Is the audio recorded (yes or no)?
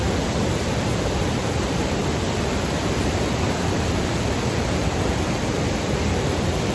no